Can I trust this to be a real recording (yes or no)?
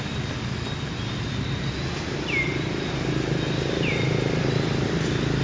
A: yes